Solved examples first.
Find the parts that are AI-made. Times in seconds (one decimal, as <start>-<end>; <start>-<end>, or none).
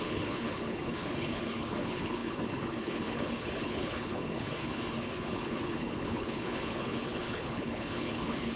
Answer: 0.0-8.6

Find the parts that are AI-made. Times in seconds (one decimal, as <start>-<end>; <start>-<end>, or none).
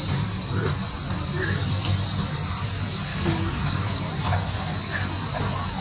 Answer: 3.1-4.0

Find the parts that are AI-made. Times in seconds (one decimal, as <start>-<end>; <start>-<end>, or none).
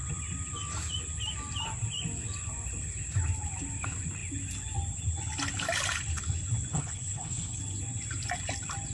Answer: 6.7-7.6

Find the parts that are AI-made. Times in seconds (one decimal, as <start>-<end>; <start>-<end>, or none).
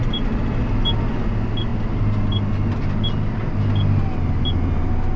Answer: none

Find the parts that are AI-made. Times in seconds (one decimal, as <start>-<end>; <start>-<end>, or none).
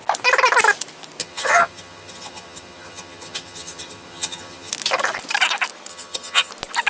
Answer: 1.2-4.7; 5.9-6.5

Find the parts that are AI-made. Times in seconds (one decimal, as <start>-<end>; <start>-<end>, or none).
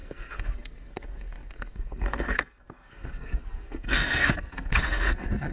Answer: 0.0-5.5